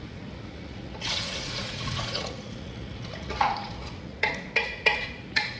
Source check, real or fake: fake